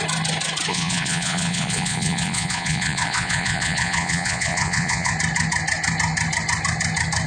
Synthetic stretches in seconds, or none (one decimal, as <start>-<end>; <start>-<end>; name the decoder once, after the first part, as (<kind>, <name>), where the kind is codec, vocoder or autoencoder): 0.7-5.1 (vocoder, Vocos)